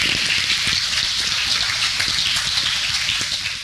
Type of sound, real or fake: real